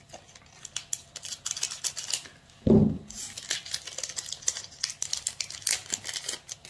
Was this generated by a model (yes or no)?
no